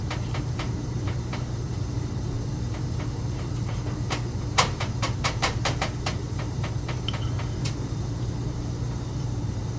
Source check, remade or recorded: remade